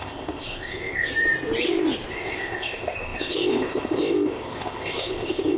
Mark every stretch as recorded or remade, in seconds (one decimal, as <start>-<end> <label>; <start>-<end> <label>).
0.0-1.1 remade; 1.1-2.1 recorded; 2.1-5.6 remade